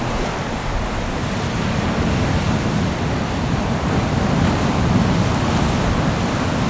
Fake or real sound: real